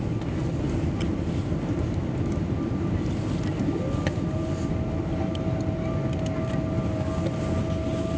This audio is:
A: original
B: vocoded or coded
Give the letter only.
A